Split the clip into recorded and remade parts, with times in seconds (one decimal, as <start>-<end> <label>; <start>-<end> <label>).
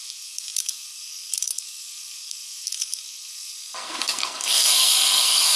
0.0-5.6 remade